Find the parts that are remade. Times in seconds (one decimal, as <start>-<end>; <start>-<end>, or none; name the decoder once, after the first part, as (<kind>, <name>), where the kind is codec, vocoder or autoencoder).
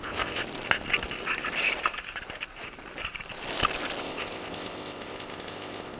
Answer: 0.0-0.4 (codec, ZipCodec); 4.0-6.0